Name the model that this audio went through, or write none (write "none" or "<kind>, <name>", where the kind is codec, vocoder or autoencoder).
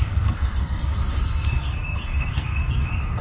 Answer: codec, SNAC